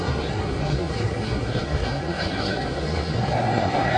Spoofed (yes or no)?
yes